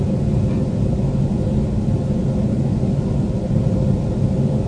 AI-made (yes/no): no